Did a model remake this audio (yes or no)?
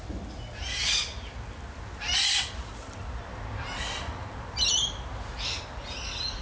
no